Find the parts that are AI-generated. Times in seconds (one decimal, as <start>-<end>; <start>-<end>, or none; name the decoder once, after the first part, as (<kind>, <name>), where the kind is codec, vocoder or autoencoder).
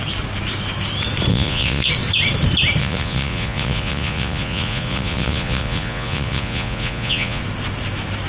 1.3-1.9 (vocoder, Vocos); 2.8-7.4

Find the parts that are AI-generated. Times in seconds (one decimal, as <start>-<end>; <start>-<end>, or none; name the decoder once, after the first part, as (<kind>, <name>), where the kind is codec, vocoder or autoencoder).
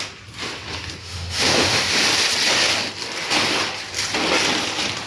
1.0-1.9 (autoencoder, DAC-VAE)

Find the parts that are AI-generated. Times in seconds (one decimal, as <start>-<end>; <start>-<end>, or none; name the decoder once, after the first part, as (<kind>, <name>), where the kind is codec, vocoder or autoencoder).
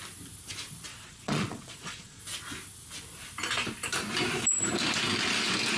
0.9-2.2 (vocoder, Vocos)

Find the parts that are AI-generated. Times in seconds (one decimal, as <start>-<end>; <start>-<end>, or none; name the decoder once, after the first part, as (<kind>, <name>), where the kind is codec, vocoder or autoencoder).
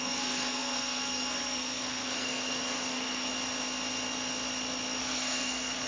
0.0-3.3 (codec, SNAC); 5.0-5.9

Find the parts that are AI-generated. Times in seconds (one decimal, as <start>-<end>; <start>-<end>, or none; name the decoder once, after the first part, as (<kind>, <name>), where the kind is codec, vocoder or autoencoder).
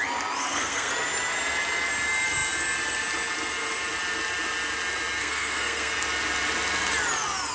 0.4-0.9 (codec, SNAC); 5.2-5.9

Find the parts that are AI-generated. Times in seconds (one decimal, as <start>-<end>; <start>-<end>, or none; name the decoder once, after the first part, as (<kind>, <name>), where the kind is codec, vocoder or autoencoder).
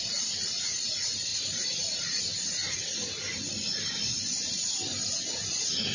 none